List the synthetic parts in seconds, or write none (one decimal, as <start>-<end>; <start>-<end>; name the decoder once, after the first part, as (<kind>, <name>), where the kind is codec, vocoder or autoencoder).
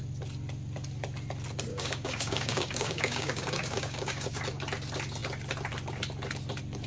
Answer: 1.7-4.4 (codec, DAC)